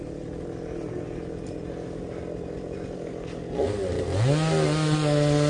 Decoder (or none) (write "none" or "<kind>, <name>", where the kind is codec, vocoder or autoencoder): none